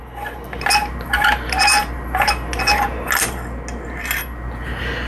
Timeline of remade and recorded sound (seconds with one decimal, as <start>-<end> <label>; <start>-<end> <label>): 0.0-5.1 recorded